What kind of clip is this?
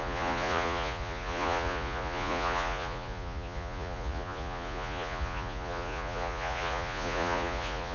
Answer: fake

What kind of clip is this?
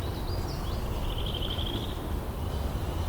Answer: real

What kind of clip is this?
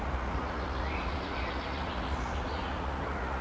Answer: fake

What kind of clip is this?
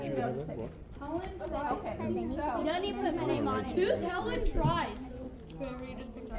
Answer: real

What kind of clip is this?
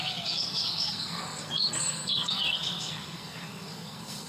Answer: fake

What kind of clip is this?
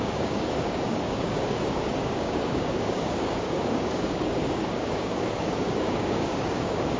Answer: fake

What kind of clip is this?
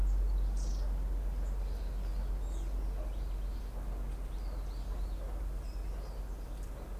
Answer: real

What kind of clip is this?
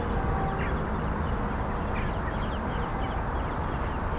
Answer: real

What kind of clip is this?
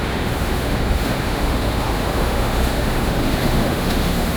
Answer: fake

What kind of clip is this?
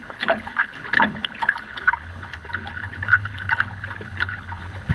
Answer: fake